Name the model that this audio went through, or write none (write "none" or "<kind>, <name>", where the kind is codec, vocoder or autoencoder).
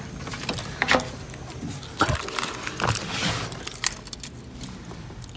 none